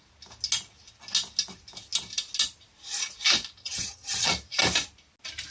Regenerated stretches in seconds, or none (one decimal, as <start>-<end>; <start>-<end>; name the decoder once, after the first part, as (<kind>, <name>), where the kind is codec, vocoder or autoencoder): 3.6-4.3 (vocoder, HiFi-GAN)